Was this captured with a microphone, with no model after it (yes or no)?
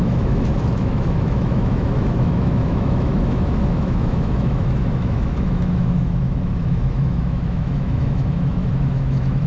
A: no